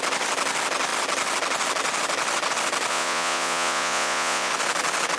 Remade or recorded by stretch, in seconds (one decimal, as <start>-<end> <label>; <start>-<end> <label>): 0.0-2.9 recorded; 2.9-4.5 remade; 4.5-5.2 recorded